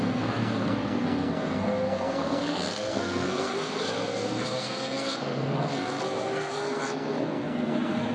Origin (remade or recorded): remade